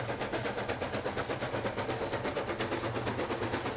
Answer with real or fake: real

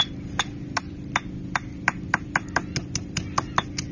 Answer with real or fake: real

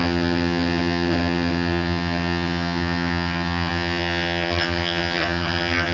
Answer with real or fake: fake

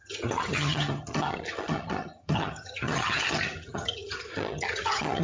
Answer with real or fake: fake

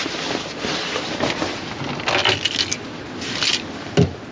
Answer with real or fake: real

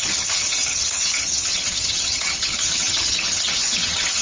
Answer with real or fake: fake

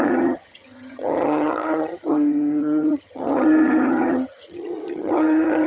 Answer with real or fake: fake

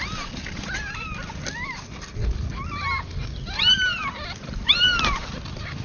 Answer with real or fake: real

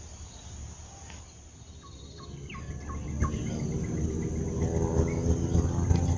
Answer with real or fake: real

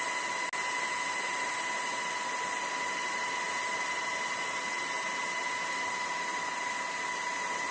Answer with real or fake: real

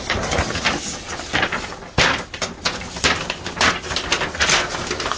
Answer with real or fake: real